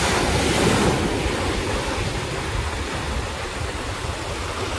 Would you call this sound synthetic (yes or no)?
no